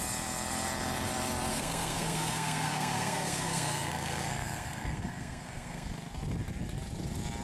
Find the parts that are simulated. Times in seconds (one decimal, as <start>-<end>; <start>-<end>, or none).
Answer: 1.5-5.9